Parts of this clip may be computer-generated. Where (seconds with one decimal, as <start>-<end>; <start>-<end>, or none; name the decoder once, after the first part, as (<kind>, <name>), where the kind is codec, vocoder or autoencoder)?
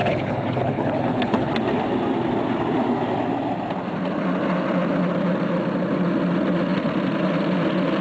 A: 0.0-1.5 (codec, HILCodec)